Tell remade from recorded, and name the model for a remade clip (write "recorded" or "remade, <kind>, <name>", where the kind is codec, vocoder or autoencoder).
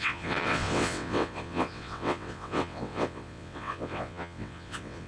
remade, vocoder, WaveNeXt